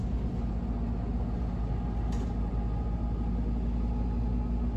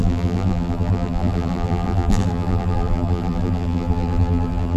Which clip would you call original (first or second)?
first